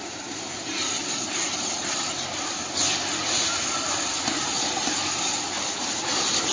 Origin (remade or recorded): recorded